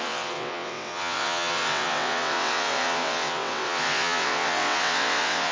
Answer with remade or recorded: remade